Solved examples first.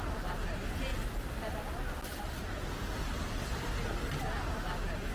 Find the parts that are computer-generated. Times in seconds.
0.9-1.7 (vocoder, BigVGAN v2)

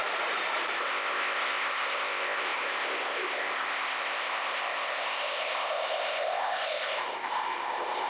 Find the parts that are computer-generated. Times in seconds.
0.8-8.1 (codec, ZipCodec)

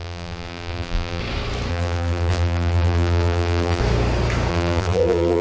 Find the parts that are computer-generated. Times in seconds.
0.0-1.2 (vocoder, BigVGAN v2); 1.7-3.8; 4.5-5.4

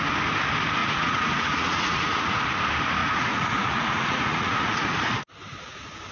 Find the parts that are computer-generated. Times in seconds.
0.8-2.4 (vocoder, Vocos); 3.0-5.3

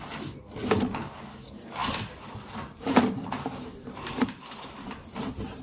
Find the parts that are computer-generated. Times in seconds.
1.8-5.6 (vocoder, BigVGAN v2)

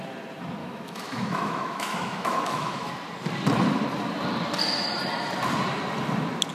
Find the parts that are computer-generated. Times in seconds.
0.6-2.9 (autoencoder, DAC-VAE)

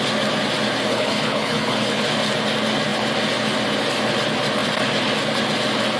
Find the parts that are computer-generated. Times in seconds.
0.9-2.0 (codec, HILCodec)

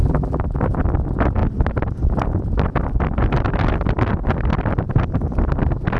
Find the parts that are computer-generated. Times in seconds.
0.0-0.6 (vocoder, BigVGAN v2)